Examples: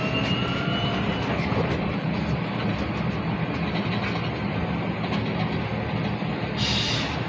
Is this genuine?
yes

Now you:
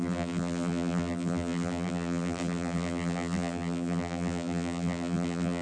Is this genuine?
no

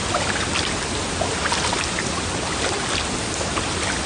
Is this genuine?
yes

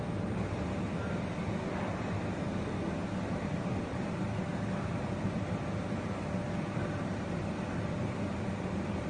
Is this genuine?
yes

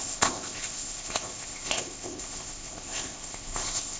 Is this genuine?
no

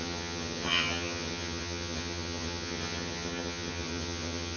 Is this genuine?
no